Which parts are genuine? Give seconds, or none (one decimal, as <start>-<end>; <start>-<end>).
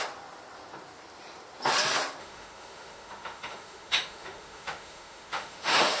0.0-2.2